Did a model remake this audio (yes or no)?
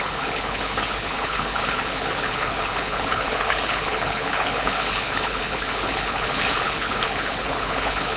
yes